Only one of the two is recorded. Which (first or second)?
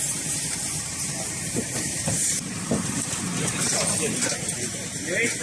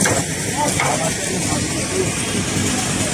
second